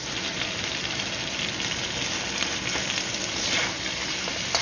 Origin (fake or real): real